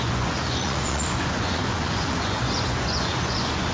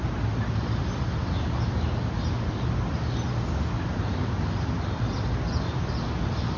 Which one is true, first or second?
second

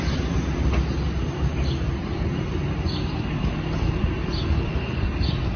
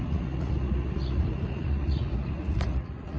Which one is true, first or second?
first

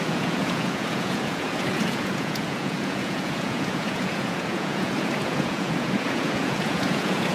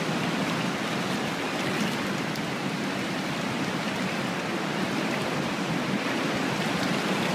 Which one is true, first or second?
second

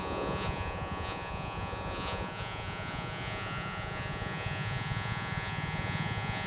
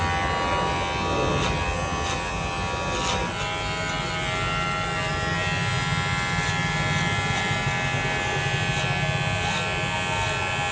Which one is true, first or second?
second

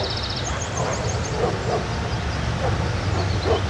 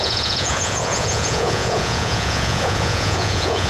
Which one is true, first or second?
first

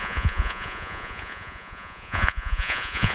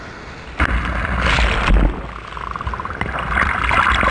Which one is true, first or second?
second